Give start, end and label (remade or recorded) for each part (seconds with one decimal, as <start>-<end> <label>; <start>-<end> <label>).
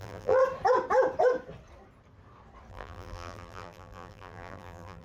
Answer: 0.0-0.4 remade; 0.4-2.7 recorded; 2.7-5.0 remade